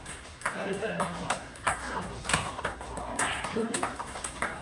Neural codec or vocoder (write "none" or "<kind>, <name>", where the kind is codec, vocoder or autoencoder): codec, SNAC